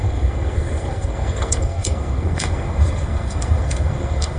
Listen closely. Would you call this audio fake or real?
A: fake